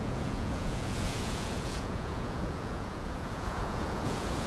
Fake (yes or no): yes